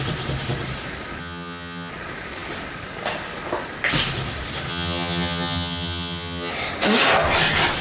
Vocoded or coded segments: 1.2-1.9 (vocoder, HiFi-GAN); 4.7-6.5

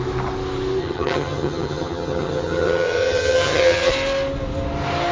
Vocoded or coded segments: 0.8-3.9 (vocoder, HiFi-GAN)

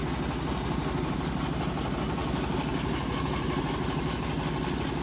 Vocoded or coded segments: none

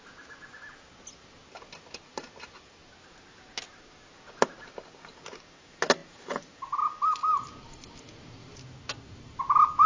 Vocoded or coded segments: none

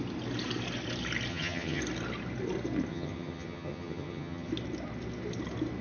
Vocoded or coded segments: 1.3-1.8 (vocoder, HiFi-GAN); 2.9-4.5

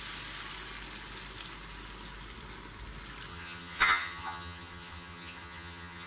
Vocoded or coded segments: 3.3-6.1 (vocoder, HiFi-GAN)

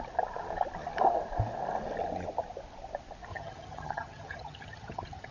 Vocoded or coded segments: 3.3-5.3 (vocoder, HiFi-GAN)

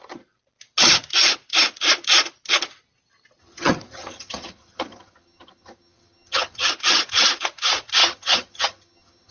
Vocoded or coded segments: 3.4-6.7 (vocoder, HiFi-GAN); 8.0-9.3